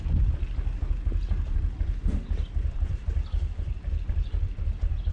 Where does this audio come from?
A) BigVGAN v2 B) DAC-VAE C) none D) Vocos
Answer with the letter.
A